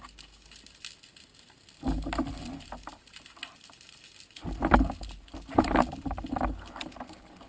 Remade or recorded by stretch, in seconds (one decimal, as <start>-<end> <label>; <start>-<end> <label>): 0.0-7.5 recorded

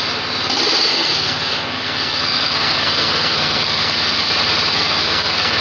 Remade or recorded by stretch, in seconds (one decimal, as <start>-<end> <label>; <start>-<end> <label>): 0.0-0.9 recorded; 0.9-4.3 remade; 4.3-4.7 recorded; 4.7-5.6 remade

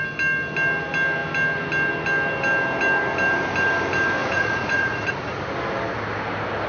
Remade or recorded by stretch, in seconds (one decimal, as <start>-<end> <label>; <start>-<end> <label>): 0.0-4.2 recorded; 4.2-5.4 remade; 5.4-6.7 recorded